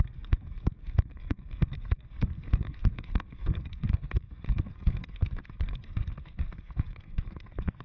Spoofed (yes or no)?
yes